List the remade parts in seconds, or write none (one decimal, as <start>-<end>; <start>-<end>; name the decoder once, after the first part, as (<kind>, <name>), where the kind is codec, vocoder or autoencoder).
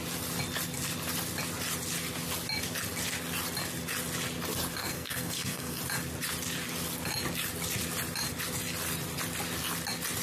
4.8-5.8 (codec, SNAC)